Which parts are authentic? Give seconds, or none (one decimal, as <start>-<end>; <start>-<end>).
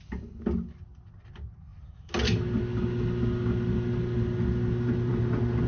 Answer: 0.0-5.7